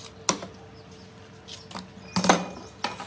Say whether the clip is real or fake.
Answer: real